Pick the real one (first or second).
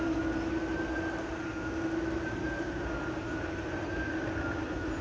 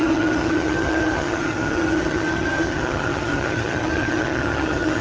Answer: first